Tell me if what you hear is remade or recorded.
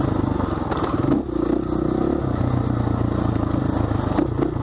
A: recorded